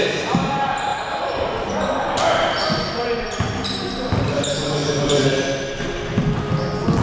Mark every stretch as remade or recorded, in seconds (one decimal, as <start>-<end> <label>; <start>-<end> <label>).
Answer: 0.0-0.9 recorded; 0.9-2.7 remade; 2.7-7.0 recorded